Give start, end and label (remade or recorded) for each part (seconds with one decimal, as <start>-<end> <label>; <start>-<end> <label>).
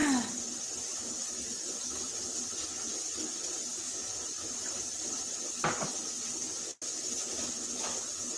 0.0-4.1 recorded; 4.1-4.7 remade; 4.7-8.4 recorded